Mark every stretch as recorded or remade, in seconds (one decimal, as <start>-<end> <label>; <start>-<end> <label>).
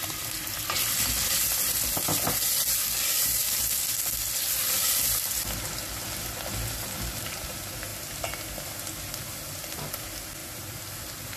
0.0-11.4 recorded